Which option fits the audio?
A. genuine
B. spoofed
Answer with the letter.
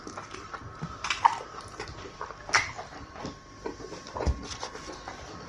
A